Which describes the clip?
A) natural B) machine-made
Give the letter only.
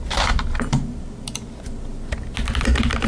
A